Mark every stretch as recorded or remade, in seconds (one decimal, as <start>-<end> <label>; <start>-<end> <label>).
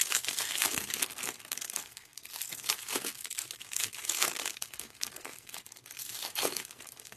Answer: 0.0-7.2 remade